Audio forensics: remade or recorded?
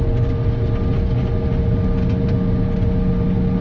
recorded